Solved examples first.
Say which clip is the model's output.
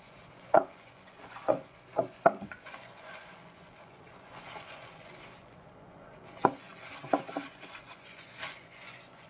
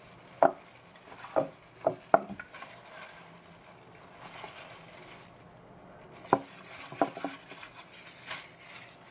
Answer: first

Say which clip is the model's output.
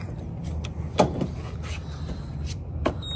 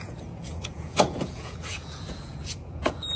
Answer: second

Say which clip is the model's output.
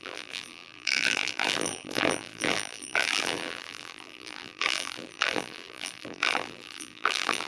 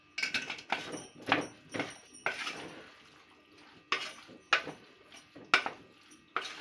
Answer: first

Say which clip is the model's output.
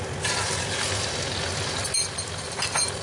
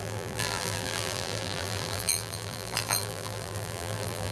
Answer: second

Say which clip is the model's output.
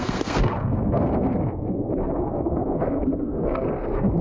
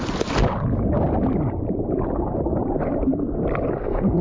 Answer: first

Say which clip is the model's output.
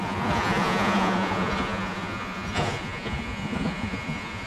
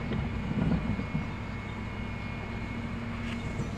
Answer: first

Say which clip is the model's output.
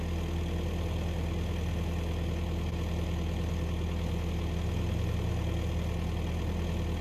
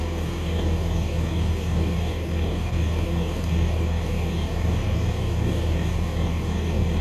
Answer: second